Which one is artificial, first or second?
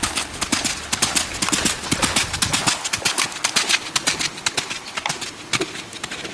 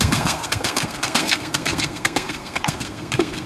second